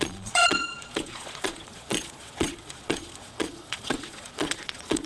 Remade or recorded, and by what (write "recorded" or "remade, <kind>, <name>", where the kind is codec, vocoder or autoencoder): remade, vocoder, Vocos